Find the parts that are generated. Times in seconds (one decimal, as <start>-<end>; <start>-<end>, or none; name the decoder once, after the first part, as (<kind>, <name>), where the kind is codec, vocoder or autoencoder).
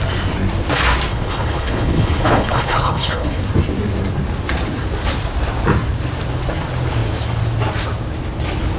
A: 1.1-3.4 (codec, HILCodec)